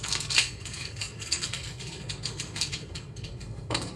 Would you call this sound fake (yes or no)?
yes